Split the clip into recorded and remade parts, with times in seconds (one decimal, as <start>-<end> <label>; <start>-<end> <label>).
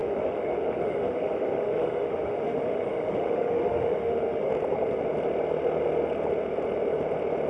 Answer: 0.0-4.5 remade; 4.5-7.5 recorded